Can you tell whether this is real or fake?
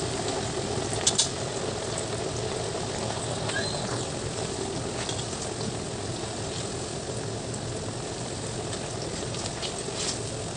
real